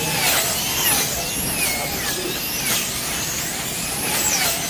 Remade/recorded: recorded